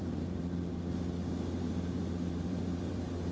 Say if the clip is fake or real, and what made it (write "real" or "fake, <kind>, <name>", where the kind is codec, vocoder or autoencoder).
fake, vocoder, BigVGAN v2